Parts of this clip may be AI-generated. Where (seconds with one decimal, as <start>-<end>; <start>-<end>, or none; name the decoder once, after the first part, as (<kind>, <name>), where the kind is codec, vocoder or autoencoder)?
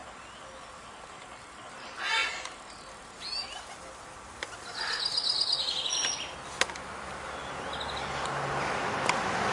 none